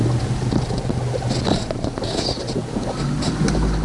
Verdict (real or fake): real